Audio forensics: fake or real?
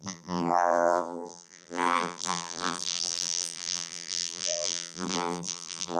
fake